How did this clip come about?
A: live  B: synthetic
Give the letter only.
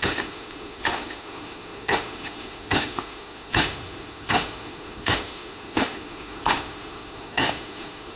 B